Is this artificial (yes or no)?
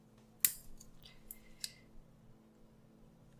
no